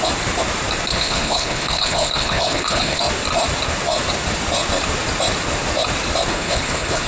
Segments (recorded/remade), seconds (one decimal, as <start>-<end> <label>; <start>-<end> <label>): 0.0-0.9 recorded; 0.9-3.0 remade; 3.0-6.3 recorded; 6.3-7.1 remade